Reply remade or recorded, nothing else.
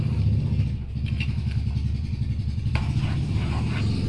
recorded